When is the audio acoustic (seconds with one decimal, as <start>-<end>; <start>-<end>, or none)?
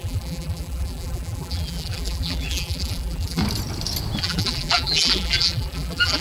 3.4-4.2